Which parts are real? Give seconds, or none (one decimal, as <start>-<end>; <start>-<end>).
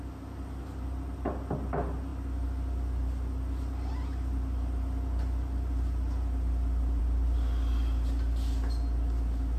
0.0-9.6